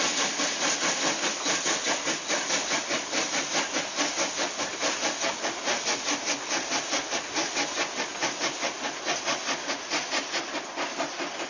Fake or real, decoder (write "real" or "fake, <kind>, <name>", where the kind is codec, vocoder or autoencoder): real